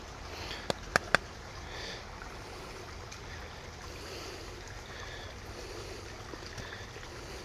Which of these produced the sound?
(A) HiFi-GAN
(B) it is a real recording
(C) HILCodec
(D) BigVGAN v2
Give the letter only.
B